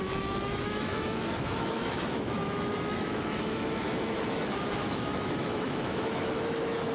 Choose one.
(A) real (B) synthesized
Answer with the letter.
B